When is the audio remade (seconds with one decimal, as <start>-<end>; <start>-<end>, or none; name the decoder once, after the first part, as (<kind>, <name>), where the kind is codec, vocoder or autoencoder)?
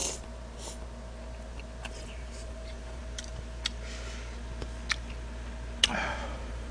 1.9-3.0 (vocoder, BigVGAN v2); 5.8-6.7